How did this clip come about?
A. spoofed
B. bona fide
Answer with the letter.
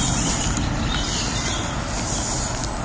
B